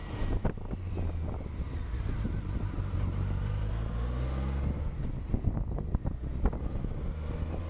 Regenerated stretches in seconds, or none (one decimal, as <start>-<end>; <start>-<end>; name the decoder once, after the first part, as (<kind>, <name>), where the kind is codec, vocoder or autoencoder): 0.0-3.7 (vocoder, BigVGAN v2)